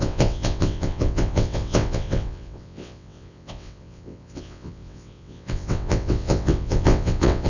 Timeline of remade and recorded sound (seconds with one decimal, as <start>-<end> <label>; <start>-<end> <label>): 0.0-7.5 remade